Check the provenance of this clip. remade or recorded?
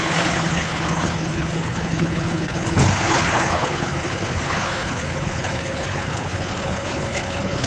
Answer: remade